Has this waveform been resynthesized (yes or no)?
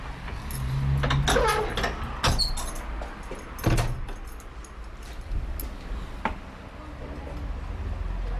no